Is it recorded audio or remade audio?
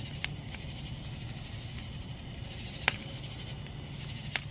recorded